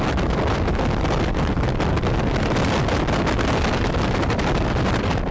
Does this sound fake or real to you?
real